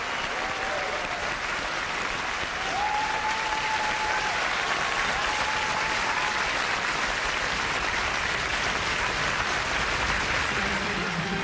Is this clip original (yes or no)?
no